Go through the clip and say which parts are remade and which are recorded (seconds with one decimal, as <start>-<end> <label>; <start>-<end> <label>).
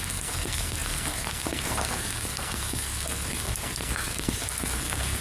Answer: 0.0-5.2 remade